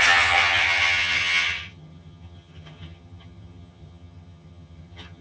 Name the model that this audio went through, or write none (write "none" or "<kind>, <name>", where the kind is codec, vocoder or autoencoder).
vocoder, HiFi-GAN